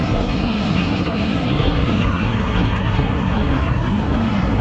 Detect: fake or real fake